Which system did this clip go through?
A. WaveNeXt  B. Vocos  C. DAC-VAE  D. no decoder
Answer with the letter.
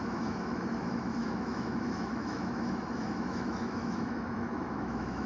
C